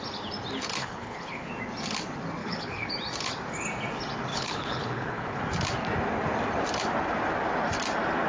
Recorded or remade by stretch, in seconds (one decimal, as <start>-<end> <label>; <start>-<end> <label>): 0.0-0.8 recorded; 0.8-1.5 remade; 1.5-2.4 recorded; 2.4-2.9 remade; 2.9-4.3 recorded; 4.3-5.4 remade; 5.4-8.3 recorded